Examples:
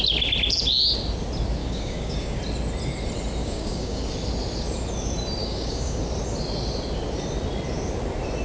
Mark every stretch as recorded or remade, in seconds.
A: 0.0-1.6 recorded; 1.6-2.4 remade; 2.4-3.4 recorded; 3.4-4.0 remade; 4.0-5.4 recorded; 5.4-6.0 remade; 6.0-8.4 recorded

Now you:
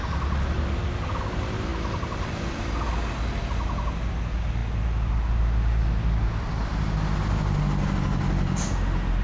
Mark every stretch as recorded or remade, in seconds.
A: 0.0-9.2 recorded

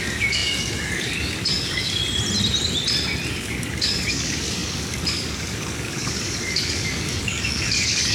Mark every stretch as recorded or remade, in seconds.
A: 0.0-2.0 remade; 2.0-3.3 recorded; 3.3-8.1 remade

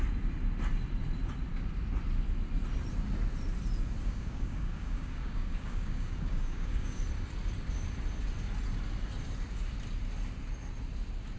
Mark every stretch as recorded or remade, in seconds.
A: 0.0-4.0 recorded; 4.0-7.0 remade; 7.0-11.4 recorded

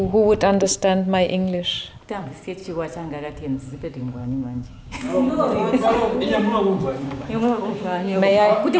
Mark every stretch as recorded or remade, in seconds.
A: 0.0-4.2 recorded; 4.2-5.3 remade; 5.3-7.0 recorded; 7.0-8.3 remade; 8.3-8.8 recorded

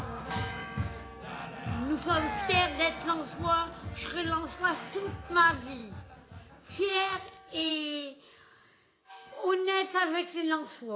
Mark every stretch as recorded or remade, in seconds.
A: 0.0-1.1 remade; 1.1-4.6 recorded; 4.6-5.8 remade; 5.8-6.5 recorded; 6.5-11.0 remade

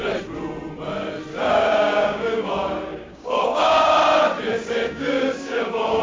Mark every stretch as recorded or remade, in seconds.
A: 0.0-1.3 recorded; 1.3-2.5 remade; 2.5-2.9 recorded; 2.9-3.9 remade; 3.9-4.5 recorded; 4.5-6.0 remade

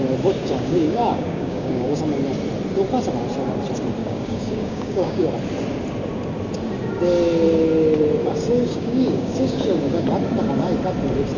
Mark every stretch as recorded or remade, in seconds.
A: 0.0-0.4 recorded; 0.4-2.0 remade; 2.0-4.0 recorded; 4.0-5.3 remade; 5.3-8.2 recorded; 8.2-10.1 remade; 10.1-11.4 recorded